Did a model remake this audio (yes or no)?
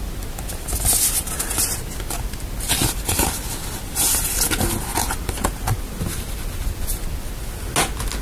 no